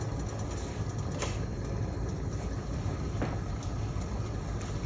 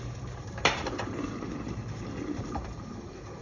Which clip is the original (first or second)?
first